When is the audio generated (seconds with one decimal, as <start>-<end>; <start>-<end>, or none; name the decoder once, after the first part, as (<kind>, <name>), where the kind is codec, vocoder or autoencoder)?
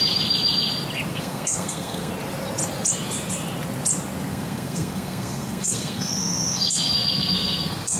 1.1-2.1 (codec, SNAC); 4.3-8.0